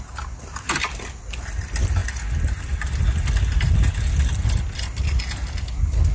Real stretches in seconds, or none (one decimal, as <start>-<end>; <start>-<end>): 0.0-6.1